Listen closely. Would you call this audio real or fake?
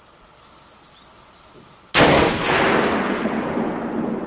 real